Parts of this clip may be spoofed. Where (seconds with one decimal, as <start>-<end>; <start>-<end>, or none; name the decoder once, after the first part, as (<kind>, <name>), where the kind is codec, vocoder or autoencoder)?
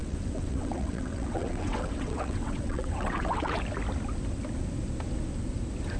0.0-3.6 (vocoder, WaveNeXt)